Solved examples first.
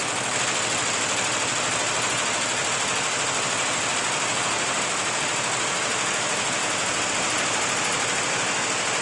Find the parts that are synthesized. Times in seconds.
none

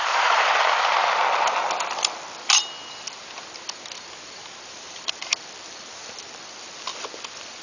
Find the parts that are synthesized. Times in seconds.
0.0-0.6 (vocoder, BigVGAN v2); 4.4-5.3